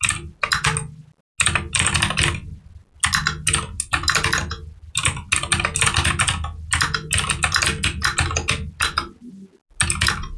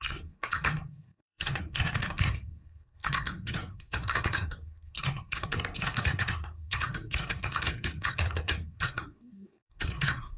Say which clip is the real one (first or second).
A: first